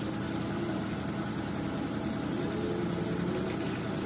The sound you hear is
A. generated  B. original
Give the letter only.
B